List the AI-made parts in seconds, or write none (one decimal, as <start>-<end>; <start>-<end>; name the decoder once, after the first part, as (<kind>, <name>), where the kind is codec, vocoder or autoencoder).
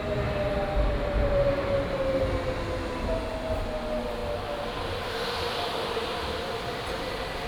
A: none